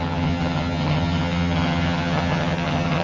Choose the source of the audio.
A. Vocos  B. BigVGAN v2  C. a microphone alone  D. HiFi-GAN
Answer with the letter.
D